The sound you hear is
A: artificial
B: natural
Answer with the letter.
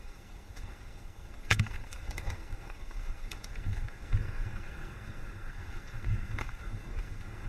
A